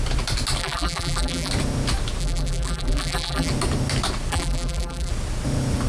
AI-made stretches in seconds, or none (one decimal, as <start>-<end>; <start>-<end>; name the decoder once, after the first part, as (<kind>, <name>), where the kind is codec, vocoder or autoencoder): 0.6-1.5 (vocoder, BigVGAN v2); 2.2-3.5; 4.3-5.1